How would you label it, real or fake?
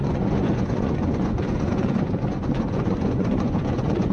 fake